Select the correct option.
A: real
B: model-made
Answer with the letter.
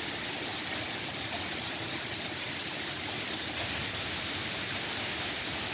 B